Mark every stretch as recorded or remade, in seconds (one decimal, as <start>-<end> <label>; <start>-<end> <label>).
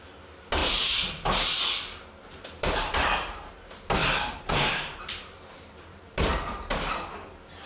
0.0-0.6 recorded; 0.6-1.6 remade; 1.6-2.3 recorded; 2.3-3.5 remade; 3.5-4.0 recorded; 4.0-6.7 remade; 6.7-7.7 recorded